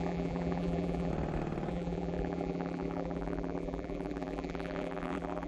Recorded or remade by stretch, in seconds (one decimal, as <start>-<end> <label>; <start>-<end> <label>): 0.0-1.1 remade; 1.1-1.7 recorded; 1.7-5.5 remade